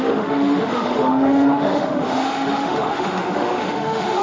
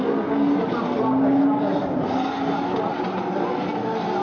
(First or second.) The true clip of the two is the second